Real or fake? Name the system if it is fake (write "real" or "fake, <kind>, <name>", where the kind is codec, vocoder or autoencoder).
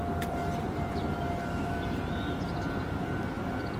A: real